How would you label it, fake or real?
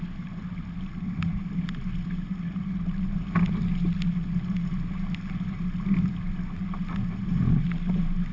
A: real